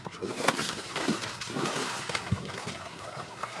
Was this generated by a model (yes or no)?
yes